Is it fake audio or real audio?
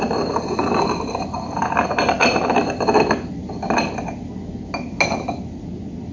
real